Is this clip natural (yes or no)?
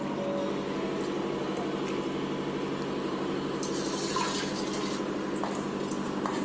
yes